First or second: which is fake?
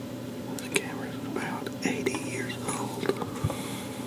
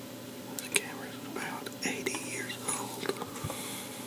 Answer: first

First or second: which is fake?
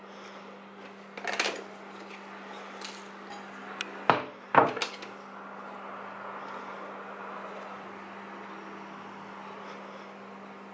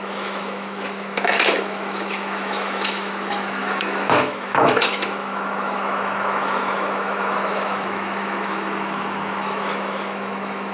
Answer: second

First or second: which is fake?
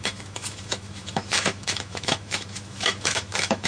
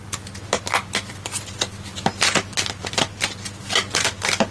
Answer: first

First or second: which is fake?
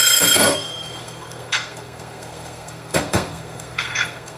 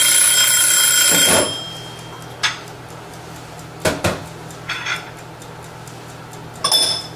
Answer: first